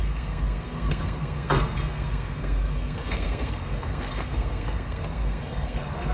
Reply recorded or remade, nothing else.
remade